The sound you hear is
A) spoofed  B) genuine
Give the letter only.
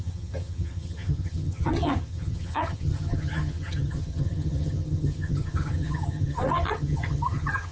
A